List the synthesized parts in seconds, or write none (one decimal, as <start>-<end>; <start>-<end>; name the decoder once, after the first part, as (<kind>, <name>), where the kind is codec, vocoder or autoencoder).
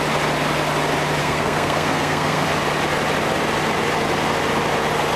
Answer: 1.2-2.5 (codec, SNAC)